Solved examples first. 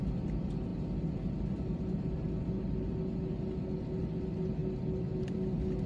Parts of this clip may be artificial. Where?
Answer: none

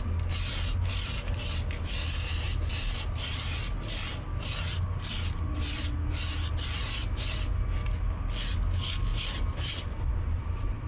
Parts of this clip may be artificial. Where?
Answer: 9.1-10.9

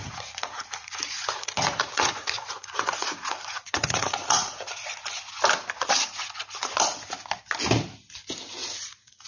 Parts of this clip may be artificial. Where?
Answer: 0.0-4.7; 8.6-9.3

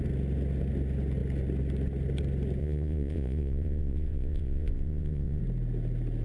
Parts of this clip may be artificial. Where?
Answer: 2.6-5.4